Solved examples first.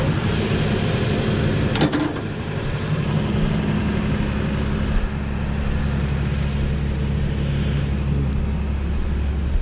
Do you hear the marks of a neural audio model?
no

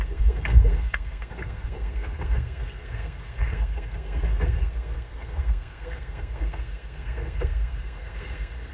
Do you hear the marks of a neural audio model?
yes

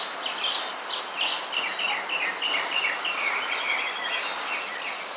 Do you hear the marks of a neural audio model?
no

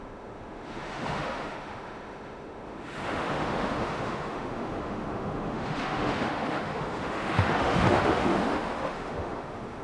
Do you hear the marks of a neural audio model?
yes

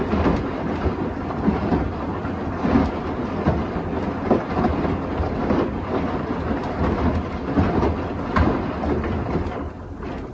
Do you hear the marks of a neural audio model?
no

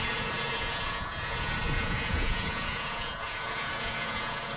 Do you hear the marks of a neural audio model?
yes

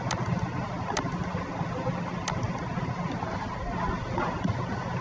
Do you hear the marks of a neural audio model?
no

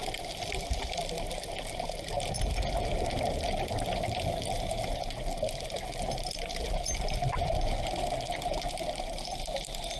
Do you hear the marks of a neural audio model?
no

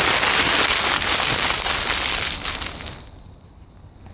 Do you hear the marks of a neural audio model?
no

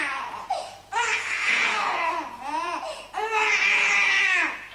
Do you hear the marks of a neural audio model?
yes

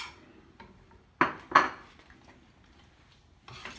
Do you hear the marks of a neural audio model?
no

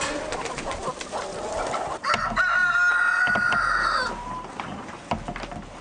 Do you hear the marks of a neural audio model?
no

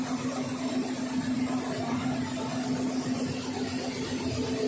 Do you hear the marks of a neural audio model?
no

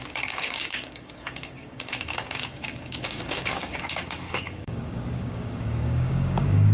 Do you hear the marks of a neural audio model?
yes